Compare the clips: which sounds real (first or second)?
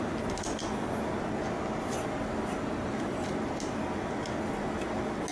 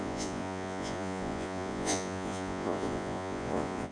first